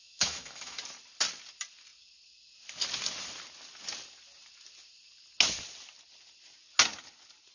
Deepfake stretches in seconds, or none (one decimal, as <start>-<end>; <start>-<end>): 0.0-0.8